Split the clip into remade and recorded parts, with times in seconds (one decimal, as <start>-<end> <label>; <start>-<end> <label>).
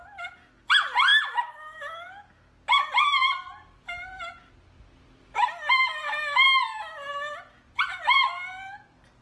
0.0-9.2 recorded